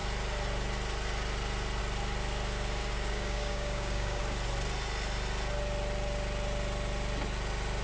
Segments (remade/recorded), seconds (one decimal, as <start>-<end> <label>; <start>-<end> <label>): 0.0-2.8 recorded; 2.8-4.2 remade; 4.2-7.8 recorded